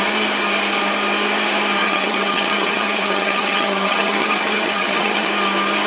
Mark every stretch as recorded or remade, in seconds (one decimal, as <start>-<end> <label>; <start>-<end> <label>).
0.0-1.8 recorded; 1.8-5.3 remade; 5.3-5.9 recorded